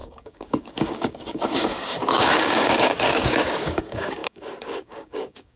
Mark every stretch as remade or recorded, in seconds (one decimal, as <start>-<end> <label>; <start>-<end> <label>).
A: 0.0-5.6 remade